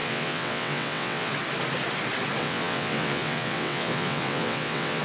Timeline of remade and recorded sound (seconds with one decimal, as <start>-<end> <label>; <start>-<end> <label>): 0.0-1.3 remade; 1.3-2.4 recorded; 2.4-5.0 remade